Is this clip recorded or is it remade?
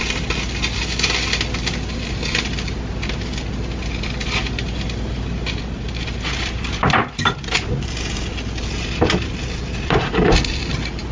recorded